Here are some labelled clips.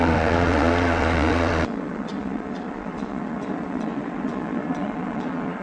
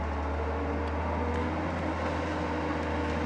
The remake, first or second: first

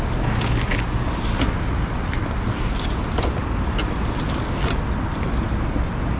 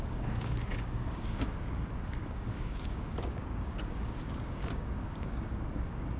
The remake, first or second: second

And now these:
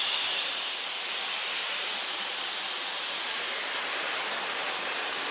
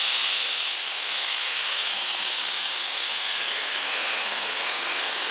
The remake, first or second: second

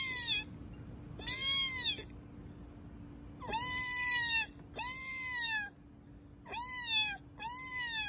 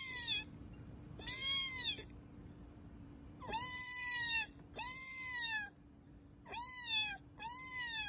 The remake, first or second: second